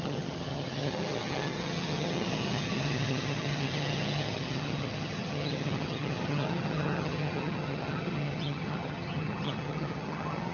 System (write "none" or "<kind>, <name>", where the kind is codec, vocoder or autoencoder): vocoder, HiFi-GAN